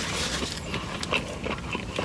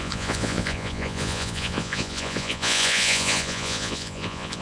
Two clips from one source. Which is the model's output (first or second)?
second